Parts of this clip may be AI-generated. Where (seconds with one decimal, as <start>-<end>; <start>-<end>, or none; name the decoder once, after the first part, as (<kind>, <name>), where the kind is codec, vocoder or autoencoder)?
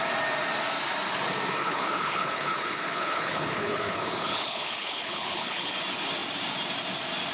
1.6-5.7 (codec, HILCodec)